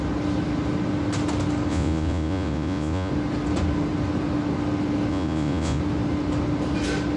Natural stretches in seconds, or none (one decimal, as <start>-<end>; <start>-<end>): 0.0-1.7; 3.1-5.1; 5.8-7.2